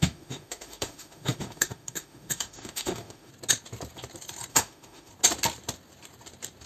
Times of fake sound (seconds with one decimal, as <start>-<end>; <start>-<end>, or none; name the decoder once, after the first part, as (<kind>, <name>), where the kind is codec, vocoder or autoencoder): 0.0-3.3 (autoencoder, DAC-VAE); 4.5-5.1

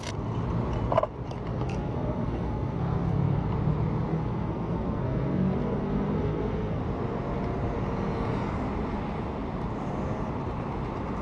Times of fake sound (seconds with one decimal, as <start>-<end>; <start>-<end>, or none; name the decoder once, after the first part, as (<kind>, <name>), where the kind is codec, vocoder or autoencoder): 1.5-3.5 (codec, SNAC); 4.1-6.8